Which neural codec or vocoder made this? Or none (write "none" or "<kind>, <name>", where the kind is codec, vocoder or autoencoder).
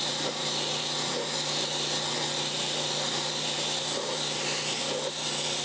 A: none